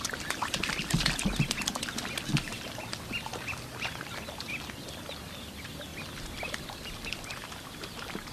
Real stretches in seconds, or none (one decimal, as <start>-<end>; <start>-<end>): 0.0-8.3